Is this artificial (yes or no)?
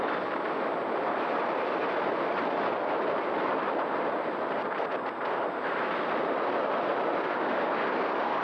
no